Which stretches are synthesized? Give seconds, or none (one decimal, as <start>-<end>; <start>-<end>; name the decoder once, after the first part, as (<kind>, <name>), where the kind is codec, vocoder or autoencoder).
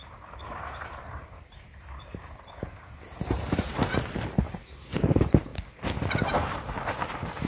0.0-7.5 (vocoder, BigVGAN v2)